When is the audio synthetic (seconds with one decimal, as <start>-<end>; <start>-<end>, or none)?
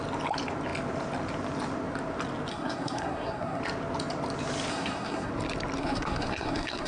2.5-3.6; 4.7-5.3; 5.8-6.9